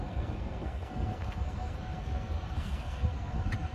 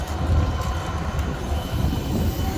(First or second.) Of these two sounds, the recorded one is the second